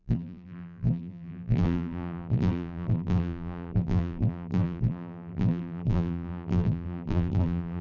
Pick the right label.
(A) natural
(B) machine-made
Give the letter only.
B